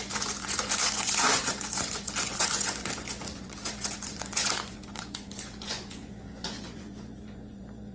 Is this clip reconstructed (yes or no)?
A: yes